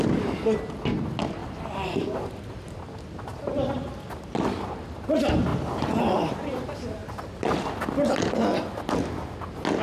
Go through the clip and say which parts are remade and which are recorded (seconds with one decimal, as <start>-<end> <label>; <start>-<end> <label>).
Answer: 0.0-1.4 recorded; 1.4-2.3 remade; 2.3-3.3 recorded; 3.3-3.9 remade; 3.9-5.5 recorded; 5.5-6.5 remade; 6.5-7.0 recorded; 7.0-8.1 remade; 8.1-9.8 recorded